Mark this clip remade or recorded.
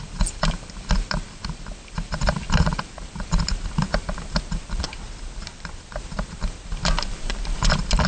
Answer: remade